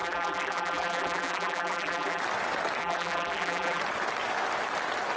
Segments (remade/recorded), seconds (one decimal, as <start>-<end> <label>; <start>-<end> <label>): 0.0-2.2 remade; 2.2-2.8 recorded; 2.8-3.8 remade; 3.8-5.2 recorded